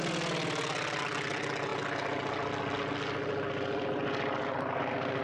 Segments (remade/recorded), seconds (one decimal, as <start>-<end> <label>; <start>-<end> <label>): 0.0-5.2 recorded